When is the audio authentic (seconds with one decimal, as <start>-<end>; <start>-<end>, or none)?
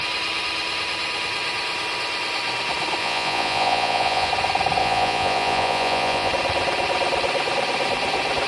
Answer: 0.0-3.0; 4.3-4.8; 6.3-8.5